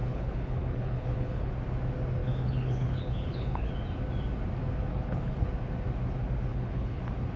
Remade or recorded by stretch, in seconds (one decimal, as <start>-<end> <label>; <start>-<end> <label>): 0.0-1.5 remade; 1.5-2.2 recorded; 2.2-3.7 remade; 3.7-4.9 recorded; 4.9-5.5 remade; 5.5-6.5 recorded; 6.5-7.0 remade; 7.0-7.4 recorded